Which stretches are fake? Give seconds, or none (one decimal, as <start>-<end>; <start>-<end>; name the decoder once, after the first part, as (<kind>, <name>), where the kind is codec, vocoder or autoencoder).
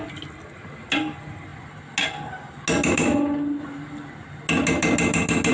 none